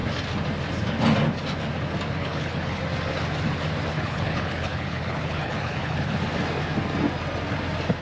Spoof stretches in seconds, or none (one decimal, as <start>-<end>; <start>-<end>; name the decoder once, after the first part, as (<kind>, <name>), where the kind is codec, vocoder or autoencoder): 2.2-2.8 (codec, HILCodec); 3.9-6.2